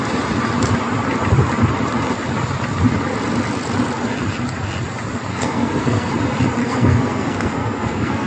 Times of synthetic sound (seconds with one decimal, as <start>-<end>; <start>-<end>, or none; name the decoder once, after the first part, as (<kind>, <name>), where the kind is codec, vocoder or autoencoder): 5.3-6.1 (codec, SNAC); 6.6-8.3